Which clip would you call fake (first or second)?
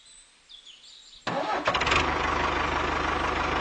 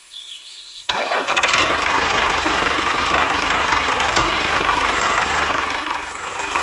second